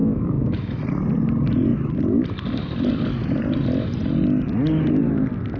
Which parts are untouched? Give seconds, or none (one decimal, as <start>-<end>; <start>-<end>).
0.8-5.6